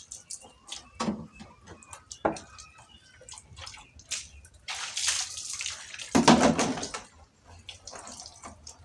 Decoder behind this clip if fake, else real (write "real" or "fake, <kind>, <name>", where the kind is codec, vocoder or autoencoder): real